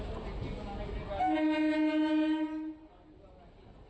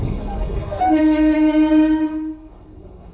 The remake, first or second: second